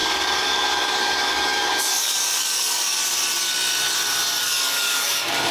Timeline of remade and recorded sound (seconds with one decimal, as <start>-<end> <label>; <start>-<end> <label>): 0.0-3.0 remade; 3.0-4.4 recorded; 4.4-5.5 remade